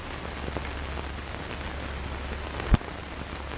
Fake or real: real